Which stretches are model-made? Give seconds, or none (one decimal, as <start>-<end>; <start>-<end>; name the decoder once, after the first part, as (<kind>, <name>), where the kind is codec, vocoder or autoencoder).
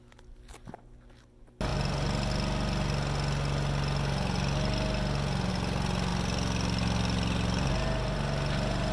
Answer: none